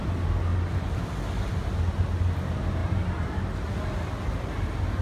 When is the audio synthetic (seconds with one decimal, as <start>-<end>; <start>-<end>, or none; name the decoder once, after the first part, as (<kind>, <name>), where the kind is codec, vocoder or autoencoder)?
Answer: none